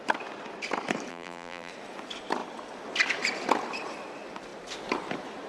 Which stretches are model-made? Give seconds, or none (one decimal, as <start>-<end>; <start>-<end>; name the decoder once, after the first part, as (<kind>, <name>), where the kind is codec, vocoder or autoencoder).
1.1-1.7 (vocoder, BigVGAN v2)